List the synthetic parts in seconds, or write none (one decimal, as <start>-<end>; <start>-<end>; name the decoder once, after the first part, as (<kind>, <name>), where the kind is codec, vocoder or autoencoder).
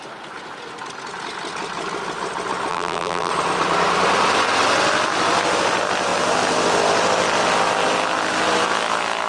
2.7-3.3 (vocoder, BigVGAN v2)